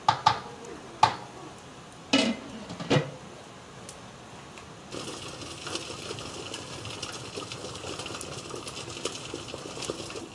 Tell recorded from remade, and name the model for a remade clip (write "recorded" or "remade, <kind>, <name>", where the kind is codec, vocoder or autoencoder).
recorded